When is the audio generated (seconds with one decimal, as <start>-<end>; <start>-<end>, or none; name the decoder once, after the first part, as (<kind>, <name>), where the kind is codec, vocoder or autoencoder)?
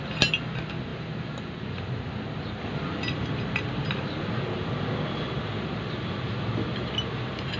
none